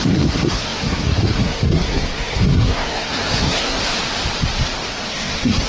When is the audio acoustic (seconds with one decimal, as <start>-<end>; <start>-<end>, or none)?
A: 3.8-5.1